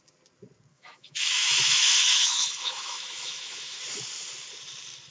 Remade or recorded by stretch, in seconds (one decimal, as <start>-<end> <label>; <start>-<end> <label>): 0.0-0.7 recorded; 0.7-3.8 remade; 3.8-5.1 recorded